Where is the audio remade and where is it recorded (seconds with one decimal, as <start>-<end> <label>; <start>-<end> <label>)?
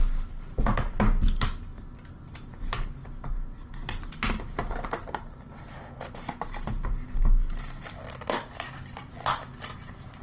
0.0-10.2 recorded